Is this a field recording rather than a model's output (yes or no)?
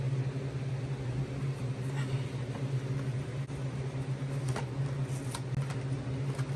yes